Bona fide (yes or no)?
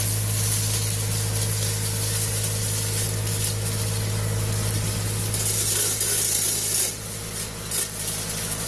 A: yes